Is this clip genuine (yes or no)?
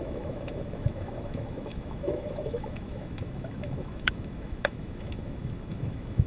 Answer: no